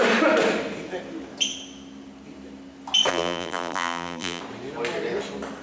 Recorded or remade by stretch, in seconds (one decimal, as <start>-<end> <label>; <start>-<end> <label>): 0.0-3.1 recorded; 3.1-4.4 remade; 4.4-5.6 recorded